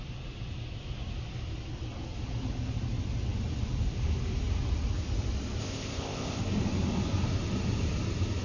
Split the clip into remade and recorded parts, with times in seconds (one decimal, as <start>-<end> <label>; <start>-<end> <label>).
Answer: 0.0-5.6 recorded; 5.6-6.4 remade; 6.4-8.4 recorded

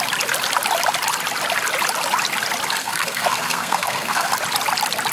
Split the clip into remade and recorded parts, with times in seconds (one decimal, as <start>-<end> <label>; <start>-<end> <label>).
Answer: 0.0-2.8 recorded; 2.8-4.3 remade; 4.3-5.1 recorded

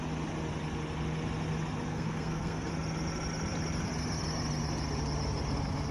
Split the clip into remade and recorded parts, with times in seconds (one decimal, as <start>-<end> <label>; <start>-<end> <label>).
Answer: 0.0-1.9 recorded; 1.9-2.7 remade; 2.7-5.9 recorded

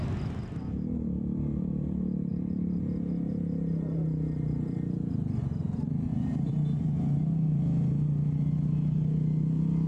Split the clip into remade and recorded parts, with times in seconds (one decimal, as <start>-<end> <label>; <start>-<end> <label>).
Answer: 0.0-2.3 recorded; 2.3-2.8 remade; 2.8-6.1 recorded; 6.1-6.9 remade; 6.9-9.9 recorded

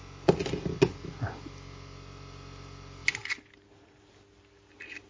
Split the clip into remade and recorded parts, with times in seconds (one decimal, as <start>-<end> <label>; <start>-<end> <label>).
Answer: 0.0-5.1 recorded